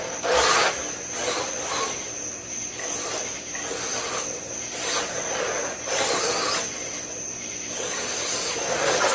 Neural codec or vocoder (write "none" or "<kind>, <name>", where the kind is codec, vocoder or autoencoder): none